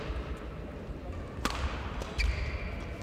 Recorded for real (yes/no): yes